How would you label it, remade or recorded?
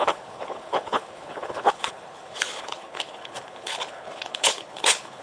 remade